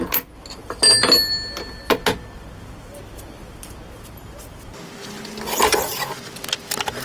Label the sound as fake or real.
real